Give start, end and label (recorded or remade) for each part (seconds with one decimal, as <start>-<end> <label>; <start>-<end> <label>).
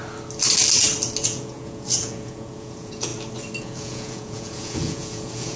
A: 0.0-1.2 recorded; 1.2-3.1 remade; 3.1-3.6 recorded; 3.6-5.6 remade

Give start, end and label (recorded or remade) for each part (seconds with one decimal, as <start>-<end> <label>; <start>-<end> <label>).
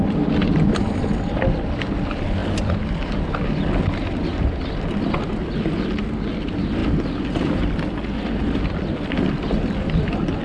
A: 0.0-10.4 recorded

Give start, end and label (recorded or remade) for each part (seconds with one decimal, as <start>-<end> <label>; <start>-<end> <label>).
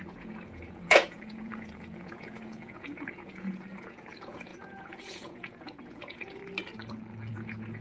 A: 0.0-6.4 remade; 6.4-7.3 recorded; 7.3-7.8 remade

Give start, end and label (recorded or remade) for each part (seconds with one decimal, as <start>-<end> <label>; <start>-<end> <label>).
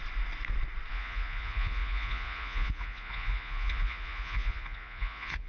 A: 0.0-0.9 recorded; 0.9-5.5 remade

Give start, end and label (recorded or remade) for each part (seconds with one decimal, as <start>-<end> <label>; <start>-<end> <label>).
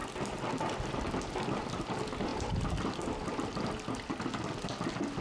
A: 0.0-5.2 recorded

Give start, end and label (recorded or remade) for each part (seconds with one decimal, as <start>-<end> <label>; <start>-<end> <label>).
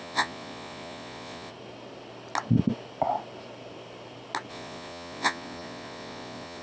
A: 0.0-1.5 remade; 1.5-4.5 recorded; 4.5-6.6 remade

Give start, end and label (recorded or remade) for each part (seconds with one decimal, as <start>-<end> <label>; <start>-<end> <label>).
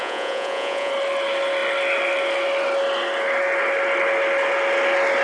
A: 0.0-0.9 remade; 0.9-5.2 recorded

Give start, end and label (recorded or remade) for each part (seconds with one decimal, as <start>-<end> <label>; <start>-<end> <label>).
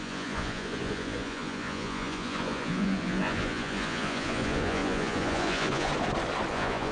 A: 0.0-5.9 remade; 5.9-6.5 recorded; 6.5-6.9 remade